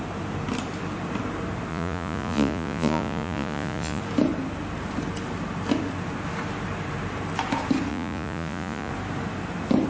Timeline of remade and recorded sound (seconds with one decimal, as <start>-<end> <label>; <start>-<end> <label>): 0.0-1.7 recorded; 1.7-4.0 remade; 4.0-7.9 recorded; 7.9-8.9 remade; 8.9-9.9 recorded